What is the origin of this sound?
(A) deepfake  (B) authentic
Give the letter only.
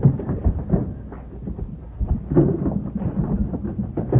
B